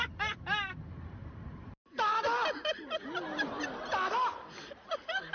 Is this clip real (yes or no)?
yes